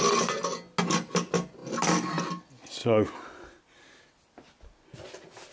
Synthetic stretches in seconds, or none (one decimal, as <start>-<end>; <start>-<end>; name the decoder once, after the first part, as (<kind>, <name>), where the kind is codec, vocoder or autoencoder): none